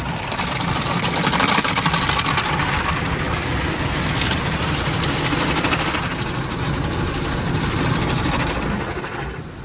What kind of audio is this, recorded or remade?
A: recorded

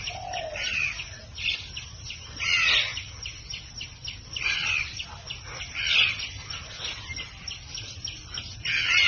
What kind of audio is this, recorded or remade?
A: recorded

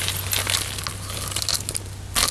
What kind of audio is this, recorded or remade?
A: recorded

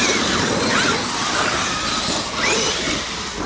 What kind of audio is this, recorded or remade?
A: recorded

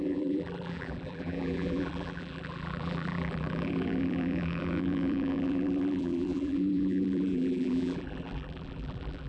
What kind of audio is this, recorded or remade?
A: remade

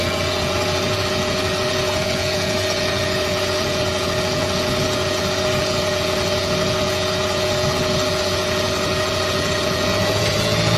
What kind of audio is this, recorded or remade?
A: remade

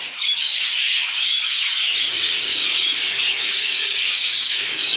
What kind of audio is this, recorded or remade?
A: remade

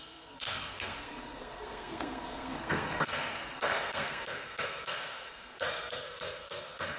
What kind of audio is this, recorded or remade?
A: remade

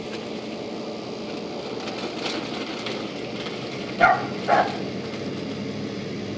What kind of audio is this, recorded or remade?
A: recorded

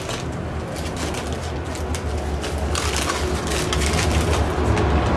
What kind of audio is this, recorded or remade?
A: recorded